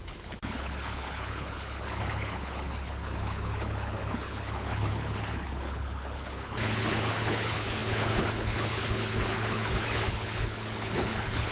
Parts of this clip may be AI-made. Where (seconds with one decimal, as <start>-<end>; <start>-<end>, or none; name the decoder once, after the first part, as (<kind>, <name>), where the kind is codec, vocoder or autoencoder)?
0.0-11.5 (codec, HILCodec)